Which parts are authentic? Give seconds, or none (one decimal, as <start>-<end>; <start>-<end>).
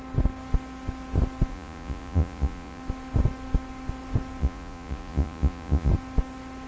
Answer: 0.0-1.5; 2.8-4.4; 5.9-6.7